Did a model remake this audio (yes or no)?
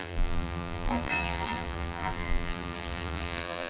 yes